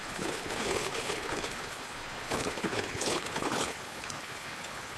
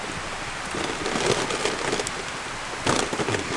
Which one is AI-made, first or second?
first